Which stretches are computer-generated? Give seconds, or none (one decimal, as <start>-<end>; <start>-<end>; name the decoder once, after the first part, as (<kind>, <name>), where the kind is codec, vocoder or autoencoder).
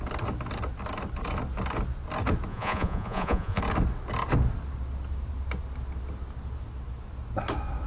2.5-3.6 (vocoder, Vocos)